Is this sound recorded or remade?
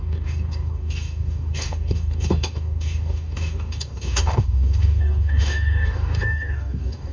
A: remade